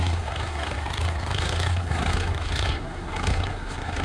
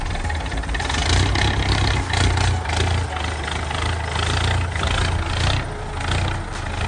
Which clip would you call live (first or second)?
second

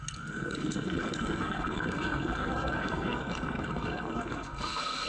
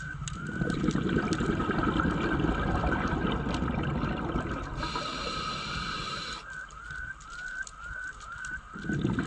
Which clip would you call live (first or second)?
second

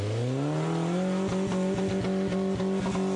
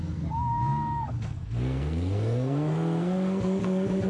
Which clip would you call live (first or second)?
first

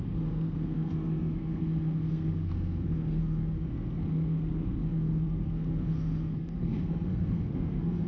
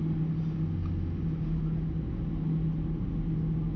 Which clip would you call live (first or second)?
second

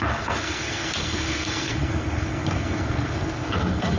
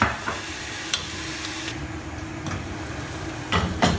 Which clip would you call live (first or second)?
second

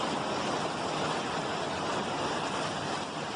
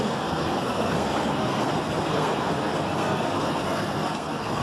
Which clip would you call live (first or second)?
first